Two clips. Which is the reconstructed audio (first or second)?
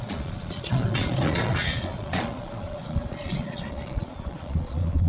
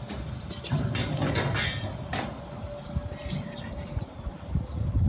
first